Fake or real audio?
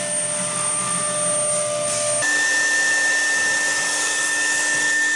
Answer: real